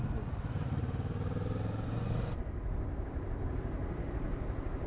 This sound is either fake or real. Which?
real